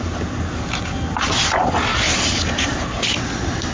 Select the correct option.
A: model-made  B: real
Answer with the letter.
B